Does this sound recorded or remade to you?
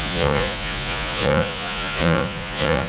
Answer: remade